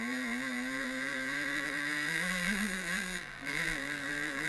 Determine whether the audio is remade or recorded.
remade